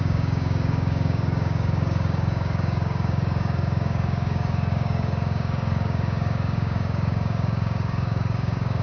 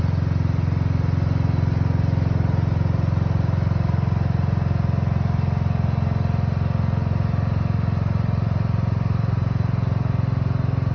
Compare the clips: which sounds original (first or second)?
second